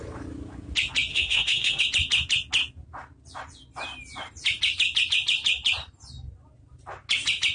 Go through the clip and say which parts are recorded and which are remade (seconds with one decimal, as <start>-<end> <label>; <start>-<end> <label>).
0.0-1.1 recorded; 1.1-1.8 remade; 1.8-7.5 recorded